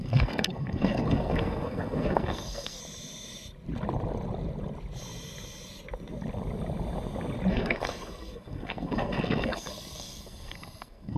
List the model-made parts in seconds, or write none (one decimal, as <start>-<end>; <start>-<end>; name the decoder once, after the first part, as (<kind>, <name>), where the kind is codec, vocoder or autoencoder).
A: 0.0-2.8 (codec, SNAC); 7.5-11.2